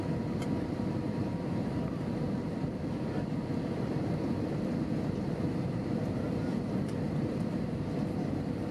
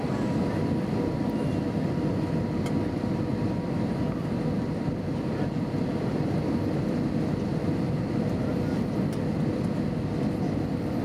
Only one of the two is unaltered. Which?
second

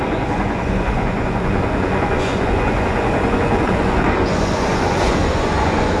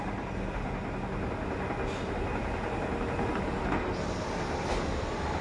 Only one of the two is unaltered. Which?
second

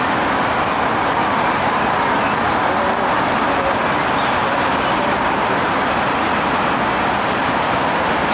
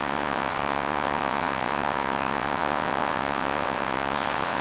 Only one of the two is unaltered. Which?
first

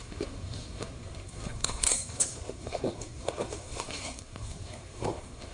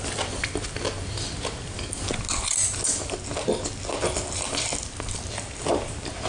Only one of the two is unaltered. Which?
second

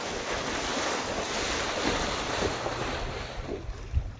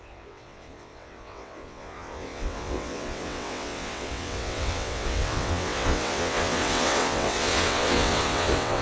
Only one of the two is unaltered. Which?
first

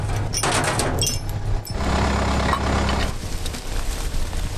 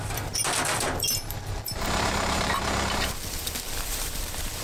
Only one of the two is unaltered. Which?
first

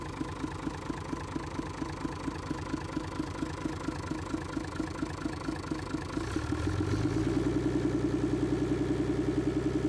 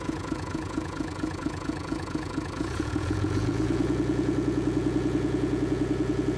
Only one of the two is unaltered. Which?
first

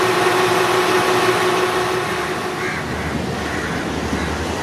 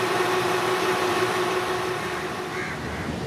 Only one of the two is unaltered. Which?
first